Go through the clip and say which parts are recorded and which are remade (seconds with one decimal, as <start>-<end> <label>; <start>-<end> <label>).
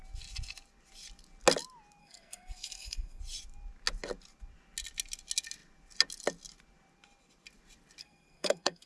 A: 0.0-2.0 recorded; 2.0-3.2 remade; 3.2-8.0 recorded; 8.0-8.9 remade